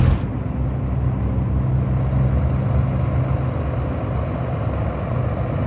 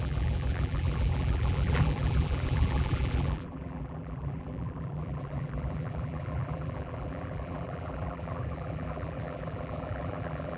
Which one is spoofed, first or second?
second